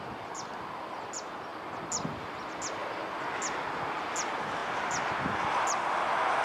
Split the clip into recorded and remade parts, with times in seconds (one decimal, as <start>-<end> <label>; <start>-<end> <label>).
0.0-6.4 recorded